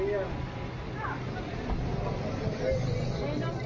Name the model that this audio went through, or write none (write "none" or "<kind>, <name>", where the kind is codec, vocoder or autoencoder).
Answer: none